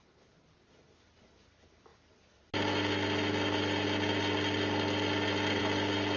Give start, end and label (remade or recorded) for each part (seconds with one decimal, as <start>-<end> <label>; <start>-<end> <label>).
0.0-6.2 recorded